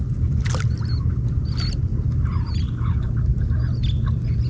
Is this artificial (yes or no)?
no